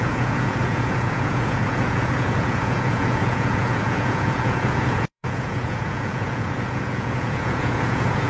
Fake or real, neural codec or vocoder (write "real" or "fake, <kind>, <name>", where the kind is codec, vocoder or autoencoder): fake, vocoder, Vocos